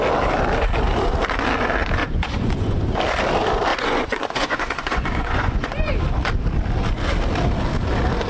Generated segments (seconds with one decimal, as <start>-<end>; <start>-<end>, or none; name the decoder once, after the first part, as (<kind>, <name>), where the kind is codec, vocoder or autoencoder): 2.0-2.8 (vocoder, Vocos); 3.7-5.9